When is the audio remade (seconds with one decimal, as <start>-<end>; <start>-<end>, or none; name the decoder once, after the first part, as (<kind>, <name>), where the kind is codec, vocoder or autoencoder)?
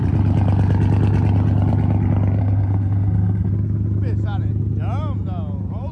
2.4-3.5 (codec, SNAC)